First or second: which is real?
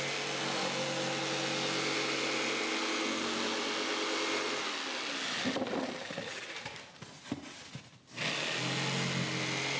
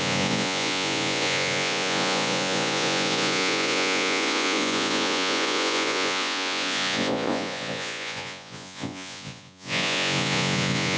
first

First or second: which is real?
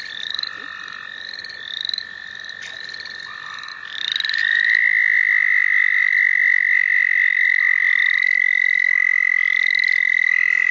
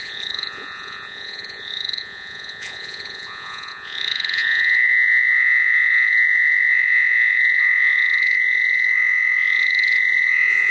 first